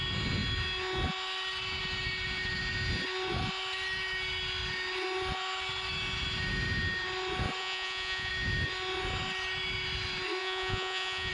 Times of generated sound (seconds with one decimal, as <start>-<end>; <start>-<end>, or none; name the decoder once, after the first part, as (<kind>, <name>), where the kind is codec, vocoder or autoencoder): 7.6-8.3 (vocoder, Vocos); 10.4-11.3